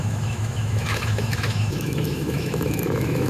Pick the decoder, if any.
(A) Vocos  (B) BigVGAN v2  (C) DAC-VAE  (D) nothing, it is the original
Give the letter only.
C